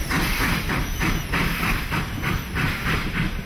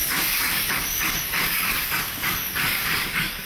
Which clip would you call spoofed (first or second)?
second